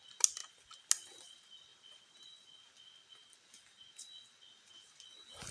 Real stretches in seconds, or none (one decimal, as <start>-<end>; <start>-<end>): 0.0-5.5